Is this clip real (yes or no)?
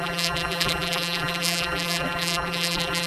no